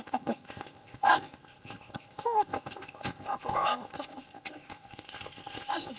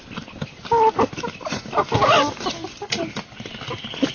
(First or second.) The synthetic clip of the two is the first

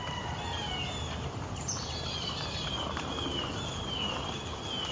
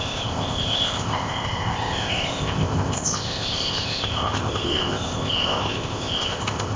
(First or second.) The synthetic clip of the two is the second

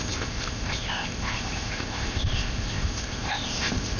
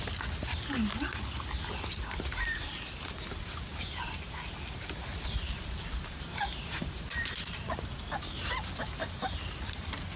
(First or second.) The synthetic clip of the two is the first